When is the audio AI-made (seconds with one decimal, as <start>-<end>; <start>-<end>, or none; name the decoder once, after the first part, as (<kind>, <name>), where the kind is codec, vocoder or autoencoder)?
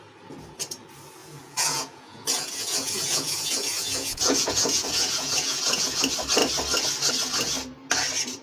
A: 1.2-6.0 (vocoder, Vocos)